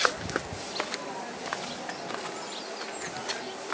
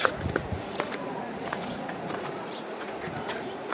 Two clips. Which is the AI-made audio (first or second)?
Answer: second